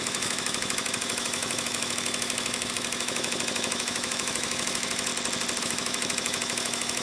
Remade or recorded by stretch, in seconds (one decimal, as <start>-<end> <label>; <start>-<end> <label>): 0.0-5.1 remade; 5.1-5.6 recorded; 5.6-7.0 remade